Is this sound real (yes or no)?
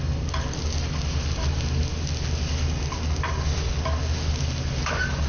yes